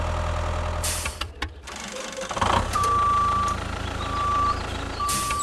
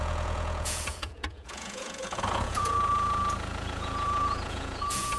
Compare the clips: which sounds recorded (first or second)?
first